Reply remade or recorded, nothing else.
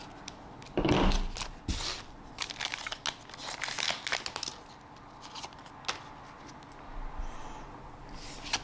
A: recorded